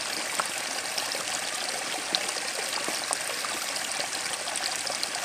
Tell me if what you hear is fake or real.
real